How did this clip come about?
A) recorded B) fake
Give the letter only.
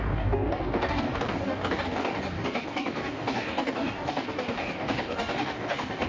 B